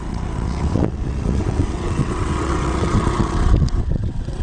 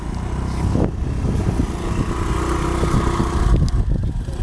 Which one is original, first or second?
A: second